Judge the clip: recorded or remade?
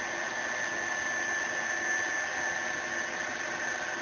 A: recorded